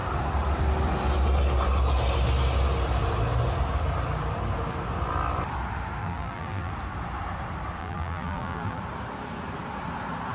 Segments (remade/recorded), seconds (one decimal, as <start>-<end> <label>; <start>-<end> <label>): 0.0-6.0 recorded; 6.0-6.7 remade; 6.7-7.8 recorded; 7.8-8.8 remade; 8.8-10.3 recorded

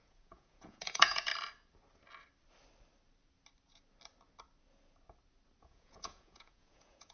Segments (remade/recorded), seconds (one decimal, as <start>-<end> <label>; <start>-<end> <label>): 0.0-1.3 remade; 1.3-5.6 recorded; 5.6-7.1 remade

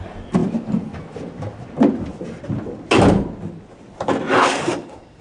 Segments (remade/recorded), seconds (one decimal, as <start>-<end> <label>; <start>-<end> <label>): 0.0-4.3 recorded; 4.3-5.2 remade

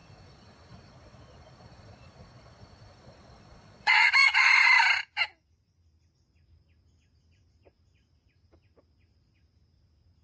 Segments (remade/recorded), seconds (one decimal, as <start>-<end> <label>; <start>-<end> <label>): 0.0-4.5 remade; 4.5-10.2 recorded

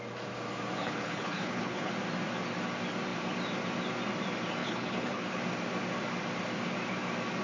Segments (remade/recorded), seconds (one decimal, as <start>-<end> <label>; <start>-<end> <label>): 0.0-0.8 recorded; 0.8-1.9 remade; 1.9-4.6 recorded; 4.6-5.4 remade; 5.4-7.4 recorded

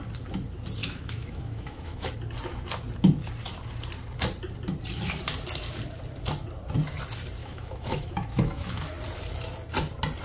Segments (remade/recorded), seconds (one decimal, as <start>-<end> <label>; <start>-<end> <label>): 0.0-0.8 recorded; 0.8-2.1 remade; 2.1-7.4 recorded; 7.4-8.8 remade; 8.8-10.2 recorded

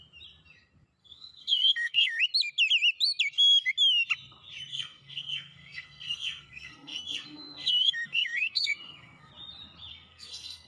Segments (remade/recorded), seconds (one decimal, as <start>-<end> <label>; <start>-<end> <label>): 0.0-1.0 recorded; 1.0-2.2 remade; 2.2-4.7 recorded; 4.7-9.3 remade; 9.3-9.9 recorded; 9.9-10.7 remade

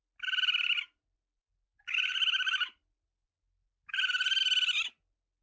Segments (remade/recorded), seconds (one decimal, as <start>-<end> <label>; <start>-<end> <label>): 0.0-5.4 recorded